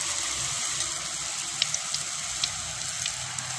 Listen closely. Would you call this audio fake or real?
real